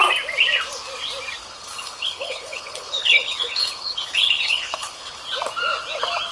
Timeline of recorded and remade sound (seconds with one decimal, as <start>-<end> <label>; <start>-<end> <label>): 0.0-1.4 recorded; 1.4-5.2 remade; 5.2-6.3 recorded